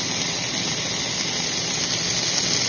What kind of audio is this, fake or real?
real